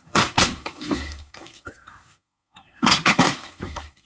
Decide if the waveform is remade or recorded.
remade